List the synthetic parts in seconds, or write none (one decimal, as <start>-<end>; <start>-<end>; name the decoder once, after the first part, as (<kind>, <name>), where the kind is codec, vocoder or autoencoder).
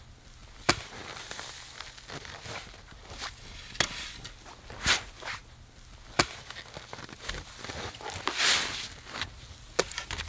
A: none